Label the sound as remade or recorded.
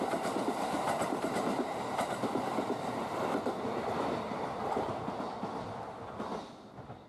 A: recorded